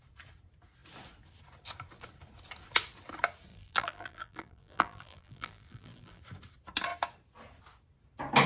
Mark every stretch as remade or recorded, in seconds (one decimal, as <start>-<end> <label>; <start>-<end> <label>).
0.0-3.5 recorded; 3.5-6.2 remade; 6.2-8.5 recorded